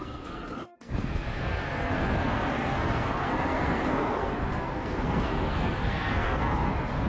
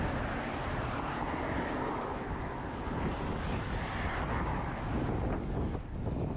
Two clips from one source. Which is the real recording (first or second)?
second